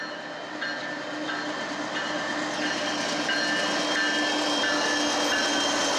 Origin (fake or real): real